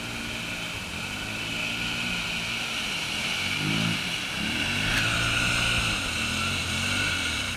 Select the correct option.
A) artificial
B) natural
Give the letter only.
B